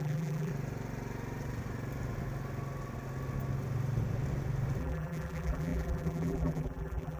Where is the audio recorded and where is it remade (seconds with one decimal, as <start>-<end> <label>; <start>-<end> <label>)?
0.0-0.5 remade; 0.5-4.8 recorded; 4.8-7.2 remade